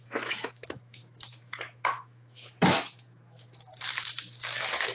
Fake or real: fake